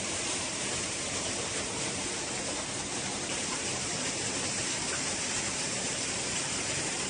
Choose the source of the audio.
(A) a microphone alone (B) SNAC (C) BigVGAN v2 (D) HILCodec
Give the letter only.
C